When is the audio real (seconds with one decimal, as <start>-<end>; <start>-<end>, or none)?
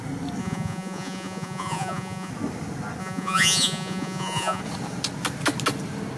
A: 0.0-0.4; 2.3-3.0; 4.6-6.2